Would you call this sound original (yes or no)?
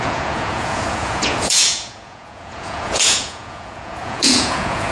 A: no